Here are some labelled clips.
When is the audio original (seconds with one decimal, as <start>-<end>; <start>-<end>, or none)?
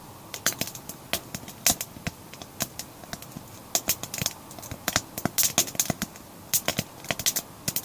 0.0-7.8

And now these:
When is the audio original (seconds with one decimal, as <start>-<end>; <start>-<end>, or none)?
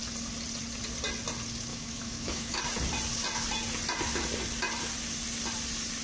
0.0-1.7; 2.6-6.0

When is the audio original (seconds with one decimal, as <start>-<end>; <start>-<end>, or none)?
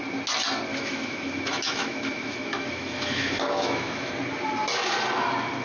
0.0-0.7; 4.1-5.6